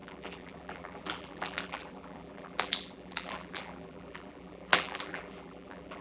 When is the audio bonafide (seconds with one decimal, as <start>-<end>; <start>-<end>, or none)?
none